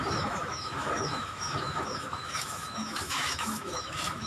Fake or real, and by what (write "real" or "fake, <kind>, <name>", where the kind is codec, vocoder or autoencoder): fake, autoencoder, DAC-VAE